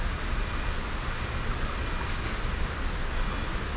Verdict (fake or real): real